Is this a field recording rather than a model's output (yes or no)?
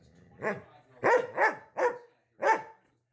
yes